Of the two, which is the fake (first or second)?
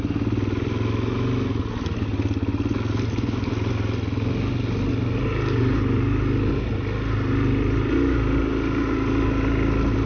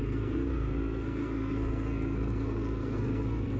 second